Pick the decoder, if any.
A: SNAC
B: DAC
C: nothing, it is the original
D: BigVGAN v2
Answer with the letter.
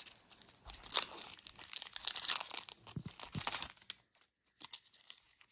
C